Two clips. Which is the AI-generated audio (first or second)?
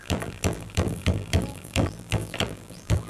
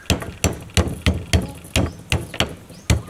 first